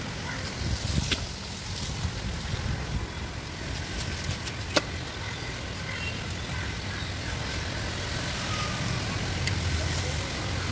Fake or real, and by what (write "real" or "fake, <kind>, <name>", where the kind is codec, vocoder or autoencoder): real